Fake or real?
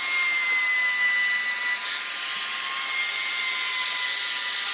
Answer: real